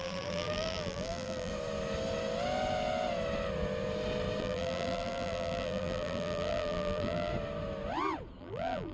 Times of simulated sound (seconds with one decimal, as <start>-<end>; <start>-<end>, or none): 0.0-1.5; 4.4-7.3; 8.4-8.9